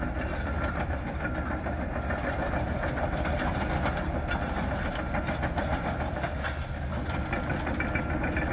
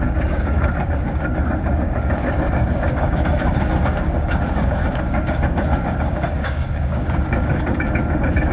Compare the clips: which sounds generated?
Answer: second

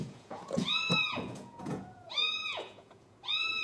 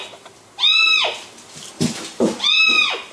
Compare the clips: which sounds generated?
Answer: first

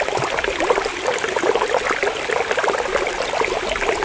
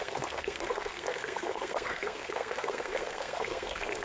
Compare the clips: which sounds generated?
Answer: second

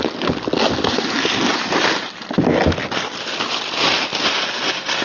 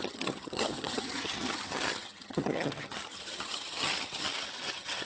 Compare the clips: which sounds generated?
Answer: second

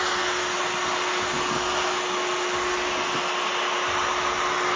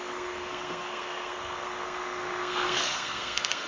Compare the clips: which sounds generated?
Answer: second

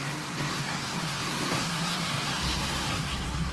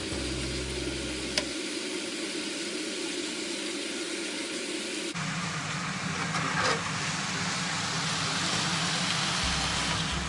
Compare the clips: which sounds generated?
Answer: first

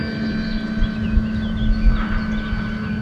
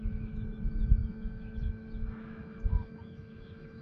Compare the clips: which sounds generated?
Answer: second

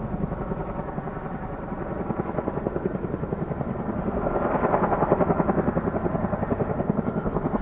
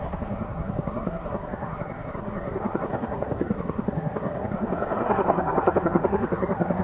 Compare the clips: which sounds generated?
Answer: second